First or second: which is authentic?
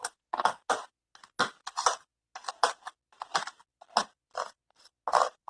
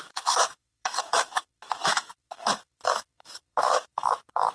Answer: first